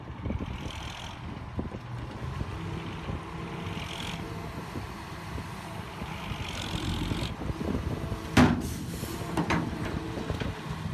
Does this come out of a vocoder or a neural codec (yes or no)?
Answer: no